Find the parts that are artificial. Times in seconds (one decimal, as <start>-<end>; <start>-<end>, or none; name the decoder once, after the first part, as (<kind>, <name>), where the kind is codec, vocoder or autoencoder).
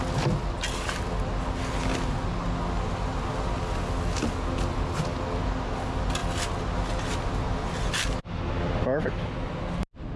none